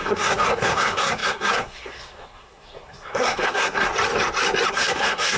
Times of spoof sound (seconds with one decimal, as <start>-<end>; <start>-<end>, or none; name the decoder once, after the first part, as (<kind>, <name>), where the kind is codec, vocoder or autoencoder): 0.0-3.9 (codec, SNAC); 4.7-5.4